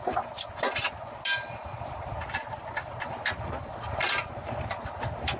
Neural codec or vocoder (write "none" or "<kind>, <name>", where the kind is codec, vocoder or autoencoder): none